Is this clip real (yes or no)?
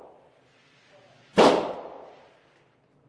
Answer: yes